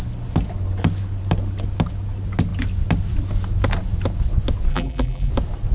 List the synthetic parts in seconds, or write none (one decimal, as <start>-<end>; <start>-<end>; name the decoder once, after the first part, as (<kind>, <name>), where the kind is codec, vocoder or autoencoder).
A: 4.7-5.3 (vocoder, BigVGAN v2)